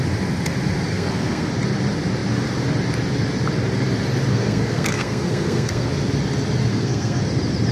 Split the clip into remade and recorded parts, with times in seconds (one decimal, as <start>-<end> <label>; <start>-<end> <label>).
0.0-0.9 recorded; 0.9-1.5 remade; 1.5-4.3 recorded; 4.3-5.9 remade; 5.9-6.7 recorded; 6.7-7.2 remade; 7.2-7.7 recorded